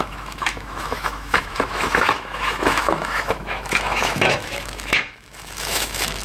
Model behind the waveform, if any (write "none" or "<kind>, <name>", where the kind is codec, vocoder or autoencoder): autoencoder, DAC-VAE